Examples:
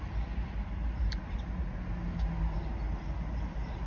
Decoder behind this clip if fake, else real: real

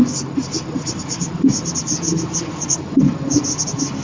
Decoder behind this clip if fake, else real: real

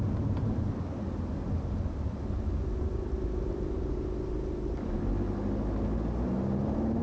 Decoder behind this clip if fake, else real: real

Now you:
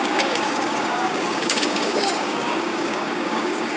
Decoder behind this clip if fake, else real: fake, codec, DAC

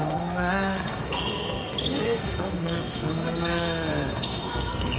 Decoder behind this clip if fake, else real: fake, codec, SNAC